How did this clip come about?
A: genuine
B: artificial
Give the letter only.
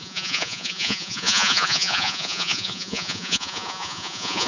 B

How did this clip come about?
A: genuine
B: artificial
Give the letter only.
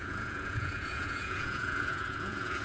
B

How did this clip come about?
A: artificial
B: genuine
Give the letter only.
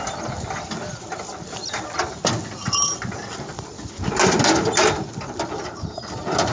B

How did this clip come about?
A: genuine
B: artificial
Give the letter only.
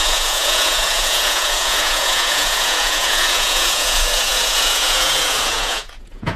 B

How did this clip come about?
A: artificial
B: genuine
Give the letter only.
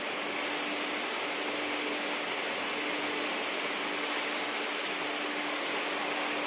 B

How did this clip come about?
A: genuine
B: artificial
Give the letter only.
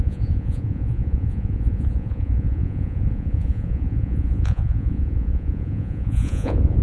B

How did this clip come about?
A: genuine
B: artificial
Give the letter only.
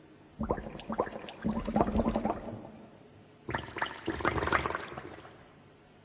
A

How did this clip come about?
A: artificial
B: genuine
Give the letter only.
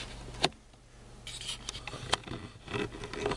B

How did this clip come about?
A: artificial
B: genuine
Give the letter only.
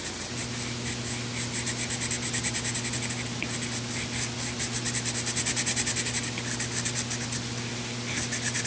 B